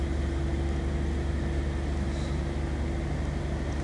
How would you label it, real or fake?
real